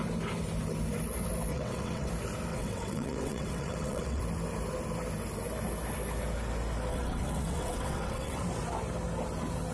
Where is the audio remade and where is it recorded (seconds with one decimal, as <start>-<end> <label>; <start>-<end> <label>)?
0.0-1.5 recorded; 1.5-2.1 remade; 2.1-2.5 recorded; 2.5-4.2 remade; 4.2-6.9 recorded; 6.9-8.4 remade; 8.4-9.7 recorded